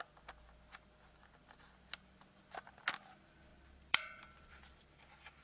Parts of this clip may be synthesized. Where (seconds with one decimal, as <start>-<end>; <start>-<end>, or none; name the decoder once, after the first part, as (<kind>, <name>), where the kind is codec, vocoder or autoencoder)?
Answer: 3.5-4.8 (vocoder, BigVGAN v2)